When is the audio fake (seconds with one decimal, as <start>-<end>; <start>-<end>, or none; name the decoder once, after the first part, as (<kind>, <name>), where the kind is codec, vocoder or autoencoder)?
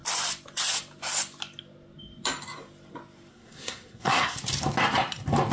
3.3-4.4 (codec, SNAC)